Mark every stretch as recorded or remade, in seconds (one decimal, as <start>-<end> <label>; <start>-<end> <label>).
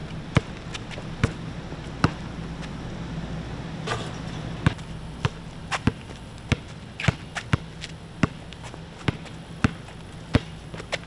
0.0-11.1 recorded